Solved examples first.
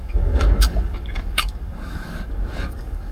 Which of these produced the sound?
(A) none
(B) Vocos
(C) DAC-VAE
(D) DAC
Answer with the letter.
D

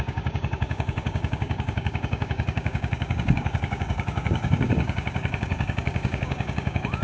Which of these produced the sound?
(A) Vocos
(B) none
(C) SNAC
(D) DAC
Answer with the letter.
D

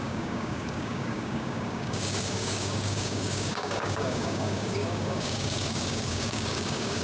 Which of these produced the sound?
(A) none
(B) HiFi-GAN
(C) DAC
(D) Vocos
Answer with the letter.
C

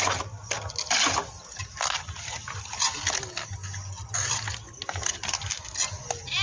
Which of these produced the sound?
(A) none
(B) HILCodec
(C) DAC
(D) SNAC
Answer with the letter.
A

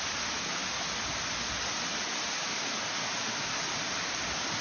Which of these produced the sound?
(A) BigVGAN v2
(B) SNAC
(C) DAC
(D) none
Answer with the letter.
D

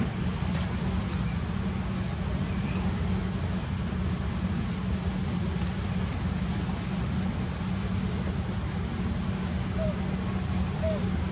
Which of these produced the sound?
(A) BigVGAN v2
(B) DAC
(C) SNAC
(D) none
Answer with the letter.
D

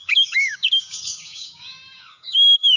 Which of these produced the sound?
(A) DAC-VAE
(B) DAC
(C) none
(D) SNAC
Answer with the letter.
B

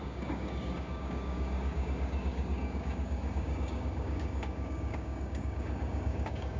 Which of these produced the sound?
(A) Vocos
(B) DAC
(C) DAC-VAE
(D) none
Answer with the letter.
B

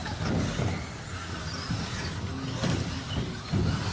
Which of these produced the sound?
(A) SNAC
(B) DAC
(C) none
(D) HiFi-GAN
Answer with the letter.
C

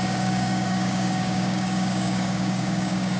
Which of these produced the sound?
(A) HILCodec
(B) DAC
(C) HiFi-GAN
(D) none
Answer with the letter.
B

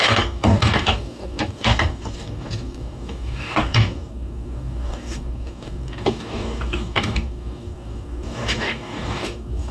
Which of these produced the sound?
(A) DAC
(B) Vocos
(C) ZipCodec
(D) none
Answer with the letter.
A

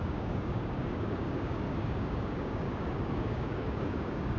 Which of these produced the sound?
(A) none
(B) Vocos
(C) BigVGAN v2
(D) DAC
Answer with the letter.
D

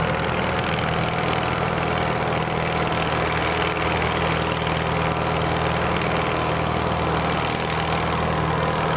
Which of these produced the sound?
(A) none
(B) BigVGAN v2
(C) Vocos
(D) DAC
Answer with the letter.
A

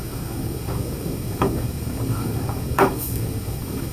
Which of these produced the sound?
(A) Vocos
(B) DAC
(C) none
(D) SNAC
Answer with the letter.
B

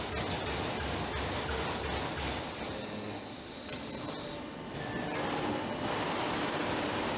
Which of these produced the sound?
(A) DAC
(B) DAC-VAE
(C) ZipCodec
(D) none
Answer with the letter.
D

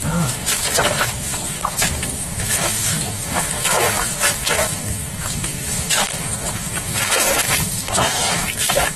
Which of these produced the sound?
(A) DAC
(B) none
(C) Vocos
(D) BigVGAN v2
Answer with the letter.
A